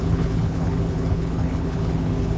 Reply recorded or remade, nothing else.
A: remade